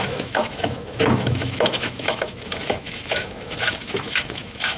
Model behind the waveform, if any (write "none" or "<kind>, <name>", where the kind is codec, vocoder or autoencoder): autoencoder, DAC-VAE